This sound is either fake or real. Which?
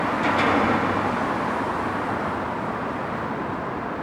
real